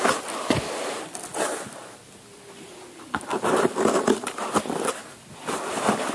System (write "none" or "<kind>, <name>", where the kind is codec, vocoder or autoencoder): none